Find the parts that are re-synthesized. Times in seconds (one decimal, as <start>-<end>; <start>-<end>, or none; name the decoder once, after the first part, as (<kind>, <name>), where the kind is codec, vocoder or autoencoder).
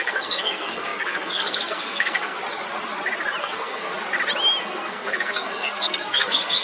0.0-2.4 (codec, SNAC); 3.4-3.9; 4.6-6.6